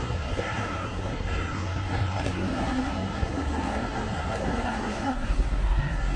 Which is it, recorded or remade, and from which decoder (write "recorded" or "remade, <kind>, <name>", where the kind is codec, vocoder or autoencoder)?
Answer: remade, codec, SNAC